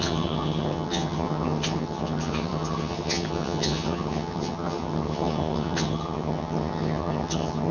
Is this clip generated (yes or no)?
yes